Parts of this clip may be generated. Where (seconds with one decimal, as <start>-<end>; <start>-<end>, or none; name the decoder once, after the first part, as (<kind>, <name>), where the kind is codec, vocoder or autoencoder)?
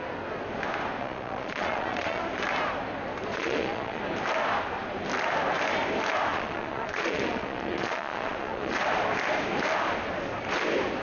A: 1.0-2.2 (vocoder, Vocos); 3.3-4.0; 6.3-8.8